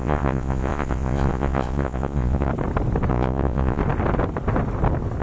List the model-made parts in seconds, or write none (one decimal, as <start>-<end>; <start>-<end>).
0.0-2.5; 3.1-3.8